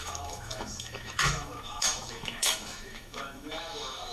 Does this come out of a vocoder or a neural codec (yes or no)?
yes